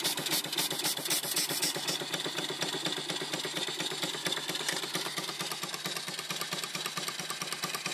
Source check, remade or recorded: recorded